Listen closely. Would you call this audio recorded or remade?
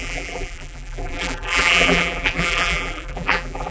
remade